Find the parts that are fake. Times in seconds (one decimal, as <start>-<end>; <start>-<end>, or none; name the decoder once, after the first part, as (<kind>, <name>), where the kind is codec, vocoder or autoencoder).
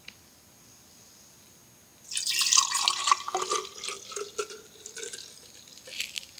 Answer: none